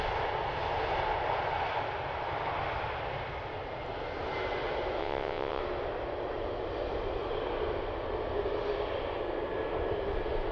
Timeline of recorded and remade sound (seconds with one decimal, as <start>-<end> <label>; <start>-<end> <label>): 0.0-5.0 recorded; 5.0-5.6 remade; 5.6-10.5 recorded

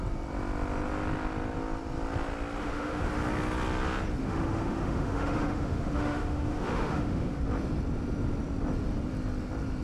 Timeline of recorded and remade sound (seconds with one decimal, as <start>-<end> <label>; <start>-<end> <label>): 0.0-2.6 recorded; 2.6-3.1 remade; 3.1-4.2 recorded; 4.2-7.4 remade; 7.4-9.8 recorded